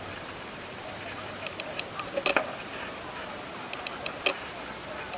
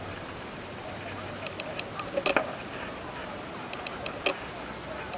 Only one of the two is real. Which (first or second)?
second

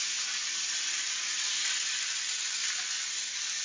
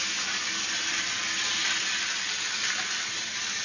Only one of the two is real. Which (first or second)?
second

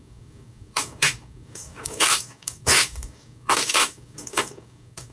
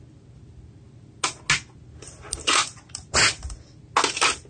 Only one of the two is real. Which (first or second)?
second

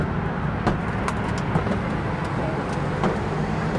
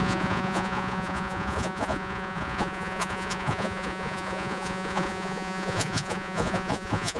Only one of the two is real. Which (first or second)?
first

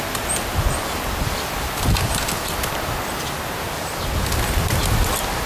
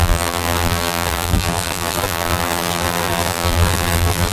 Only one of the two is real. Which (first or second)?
first